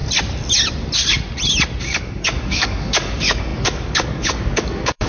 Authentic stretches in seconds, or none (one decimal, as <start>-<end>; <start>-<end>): 0.0-1.8